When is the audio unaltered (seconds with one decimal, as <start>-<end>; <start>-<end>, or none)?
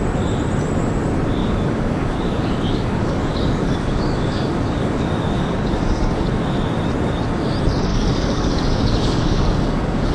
0.0-1.4; 6.4-7.9